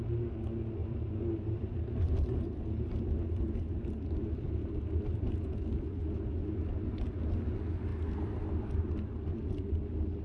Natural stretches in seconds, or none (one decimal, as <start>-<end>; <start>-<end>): 0.0-0.8; 5.0-10.2